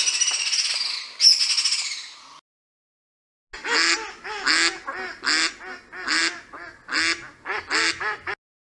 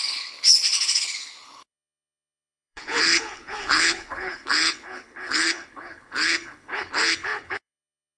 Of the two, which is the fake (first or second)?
second